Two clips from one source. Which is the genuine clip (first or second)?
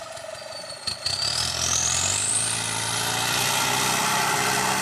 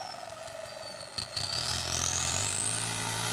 first